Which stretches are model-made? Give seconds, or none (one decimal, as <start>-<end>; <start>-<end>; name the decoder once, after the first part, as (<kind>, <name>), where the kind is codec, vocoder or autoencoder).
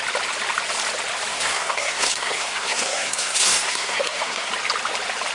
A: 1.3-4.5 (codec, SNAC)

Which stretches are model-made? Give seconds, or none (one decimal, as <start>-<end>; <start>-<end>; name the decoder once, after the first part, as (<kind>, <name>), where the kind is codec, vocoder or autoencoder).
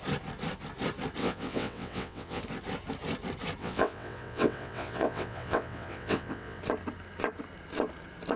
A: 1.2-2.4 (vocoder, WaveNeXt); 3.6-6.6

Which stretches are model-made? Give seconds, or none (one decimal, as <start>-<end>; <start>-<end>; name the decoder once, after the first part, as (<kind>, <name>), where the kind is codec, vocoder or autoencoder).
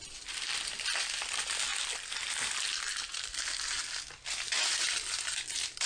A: none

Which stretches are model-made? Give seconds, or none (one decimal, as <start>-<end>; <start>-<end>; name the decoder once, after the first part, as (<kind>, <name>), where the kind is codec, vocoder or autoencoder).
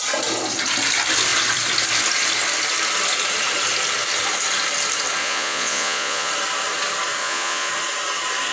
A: 5.2-6.3 (vocoder, Vocos); 7.2-7.7